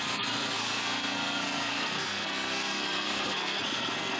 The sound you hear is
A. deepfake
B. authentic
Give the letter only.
A